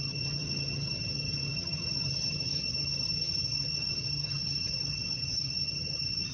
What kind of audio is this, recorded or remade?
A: remade